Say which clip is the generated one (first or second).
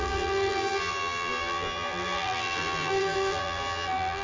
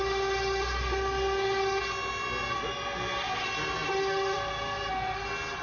first